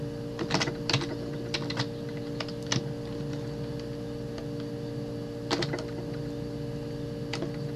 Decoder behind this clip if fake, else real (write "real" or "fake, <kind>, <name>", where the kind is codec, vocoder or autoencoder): real